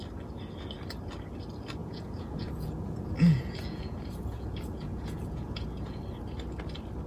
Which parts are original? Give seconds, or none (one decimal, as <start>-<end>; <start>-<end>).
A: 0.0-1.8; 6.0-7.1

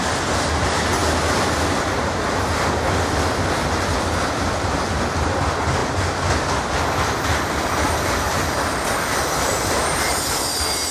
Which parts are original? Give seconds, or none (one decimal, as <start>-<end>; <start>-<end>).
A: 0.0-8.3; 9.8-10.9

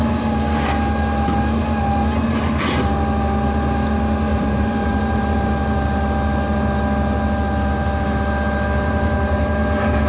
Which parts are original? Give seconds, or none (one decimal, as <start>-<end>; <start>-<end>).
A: 0.0-4.3; 5.5-8.9; 9.5-10.1